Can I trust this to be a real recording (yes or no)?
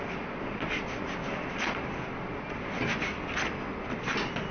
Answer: yes